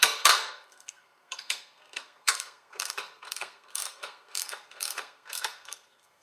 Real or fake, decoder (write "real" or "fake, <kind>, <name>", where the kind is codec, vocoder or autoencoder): fake, codec, SNAC